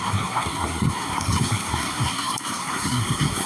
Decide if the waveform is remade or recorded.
remade